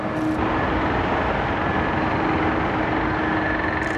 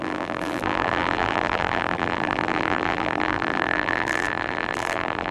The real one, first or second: first